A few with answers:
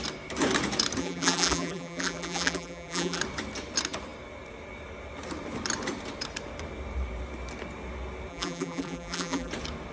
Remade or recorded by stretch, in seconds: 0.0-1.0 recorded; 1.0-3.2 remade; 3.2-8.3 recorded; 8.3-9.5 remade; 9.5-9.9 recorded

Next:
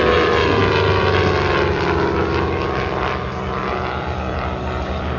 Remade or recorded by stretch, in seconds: 0.0-5.2 recorded

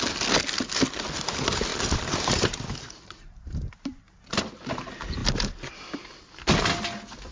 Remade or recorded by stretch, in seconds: 0.0-1.7 recorded; 1.7-4.0 remade; 4.0-5.2 recorded; 5.2-5.7 remade; 5.7-7.3 recorded

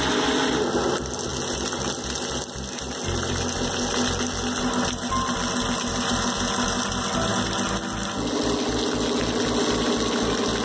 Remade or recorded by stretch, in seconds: 0.0-10.6 recorded

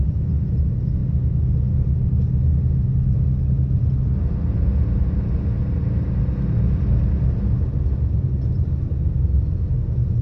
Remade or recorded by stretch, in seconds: 0.0-10.2 recorded

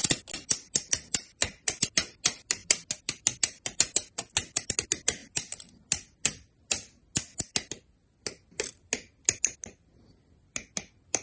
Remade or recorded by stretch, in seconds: 0.0-11.2 recorded

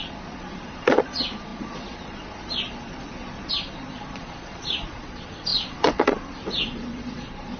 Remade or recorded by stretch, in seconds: 0.0-7.6 remade

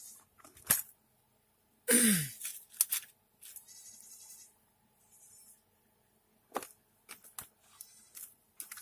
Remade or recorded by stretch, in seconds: 0.0-8.8 recorded